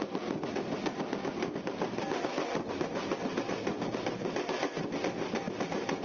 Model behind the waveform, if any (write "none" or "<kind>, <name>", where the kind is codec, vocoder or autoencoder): none